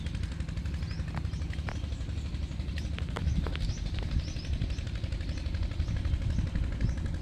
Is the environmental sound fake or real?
real